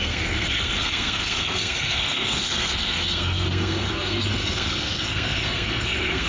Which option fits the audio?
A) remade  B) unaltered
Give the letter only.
A